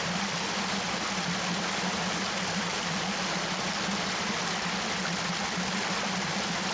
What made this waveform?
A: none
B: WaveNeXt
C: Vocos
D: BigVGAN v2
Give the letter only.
A